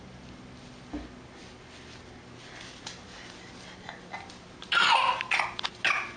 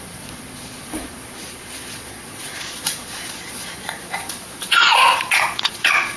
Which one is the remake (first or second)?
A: second